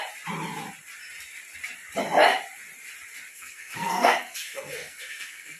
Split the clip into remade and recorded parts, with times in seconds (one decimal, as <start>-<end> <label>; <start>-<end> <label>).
0.0-3.3 recorded; 3.3-5.6 remade